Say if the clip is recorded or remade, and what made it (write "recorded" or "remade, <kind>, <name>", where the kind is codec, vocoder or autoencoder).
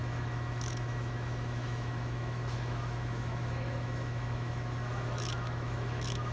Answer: remade, autoencoder, DAC-VAE